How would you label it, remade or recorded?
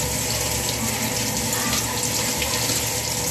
recorded